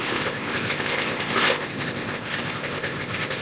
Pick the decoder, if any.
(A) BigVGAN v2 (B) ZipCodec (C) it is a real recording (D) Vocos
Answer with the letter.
B